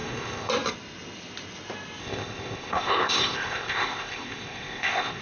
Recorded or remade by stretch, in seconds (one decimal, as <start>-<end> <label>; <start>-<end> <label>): 0.0-0.5 remade; 0.5-2.0 recorded; 2.0-5.2 remade